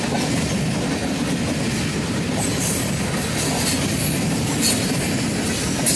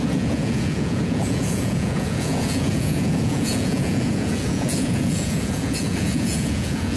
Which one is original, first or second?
first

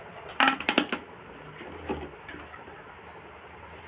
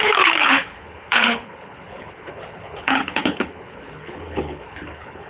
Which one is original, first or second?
first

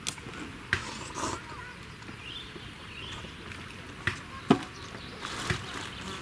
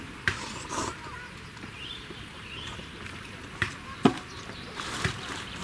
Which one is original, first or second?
first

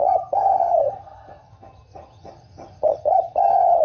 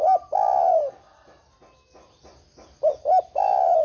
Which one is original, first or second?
second